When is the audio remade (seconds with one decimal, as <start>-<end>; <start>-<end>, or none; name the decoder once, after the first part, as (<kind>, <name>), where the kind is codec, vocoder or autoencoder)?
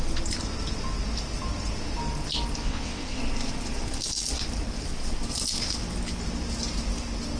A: 2.6-3.2 (vocoder, WaveNeXt)